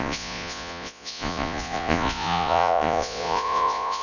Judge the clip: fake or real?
fake